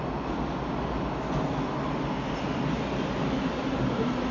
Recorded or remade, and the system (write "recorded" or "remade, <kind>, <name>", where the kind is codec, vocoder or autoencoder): recorded